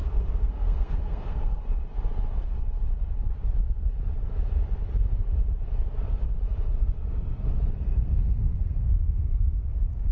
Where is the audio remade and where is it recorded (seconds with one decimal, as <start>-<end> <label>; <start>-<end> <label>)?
0.0-1.6 remade; 1.6-7.9 recorded; 7.9-9.6 remade; 9.6-10.1 recorded